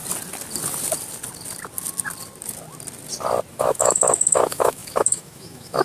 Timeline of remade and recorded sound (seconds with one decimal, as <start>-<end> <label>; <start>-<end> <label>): 0.0-3.5 recorded; 3.5-5.8 remade